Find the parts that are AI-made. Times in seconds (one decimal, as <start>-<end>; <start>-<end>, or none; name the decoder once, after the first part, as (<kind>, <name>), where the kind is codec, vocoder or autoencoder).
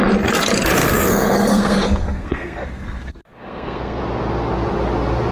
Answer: 0.8-4.0 (codec, SNAC)